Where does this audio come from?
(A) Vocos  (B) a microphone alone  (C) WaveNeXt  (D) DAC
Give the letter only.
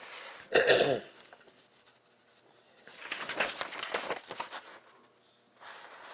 B